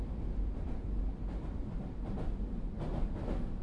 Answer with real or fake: real